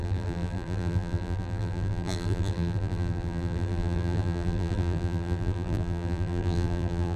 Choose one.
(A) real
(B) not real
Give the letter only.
B